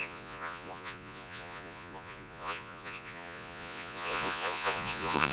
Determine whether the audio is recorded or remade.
remade